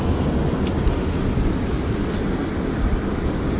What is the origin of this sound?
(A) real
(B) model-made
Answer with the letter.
A